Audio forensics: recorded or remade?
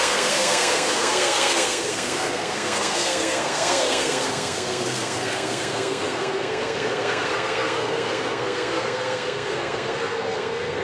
remade